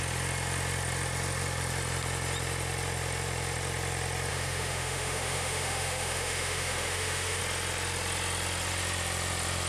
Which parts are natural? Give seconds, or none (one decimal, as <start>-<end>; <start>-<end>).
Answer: 0.0-4.3; 7.4-9.7